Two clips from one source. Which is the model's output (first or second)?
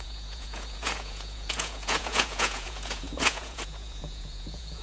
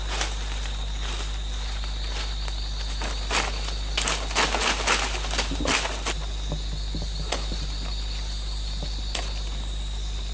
first